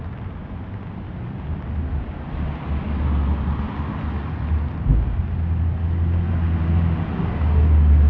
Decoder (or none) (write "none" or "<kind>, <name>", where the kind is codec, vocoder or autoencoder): none